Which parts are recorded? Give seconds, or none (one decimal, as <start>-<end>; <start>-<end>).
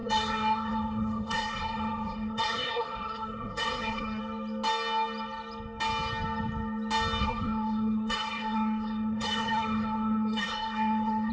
4.2-7.2